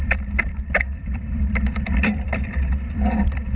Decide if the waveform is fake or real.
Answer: fake